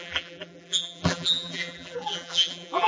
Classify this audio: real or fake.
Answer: fake